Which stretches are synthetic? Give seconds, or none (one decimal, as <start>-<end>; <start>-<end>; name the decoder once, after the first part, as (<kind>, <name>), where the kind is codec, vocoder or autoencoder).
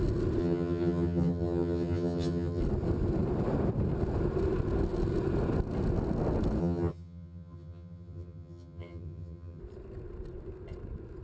0.4-2.6 (vocoder, HiFi-GAN); 6.6-9.6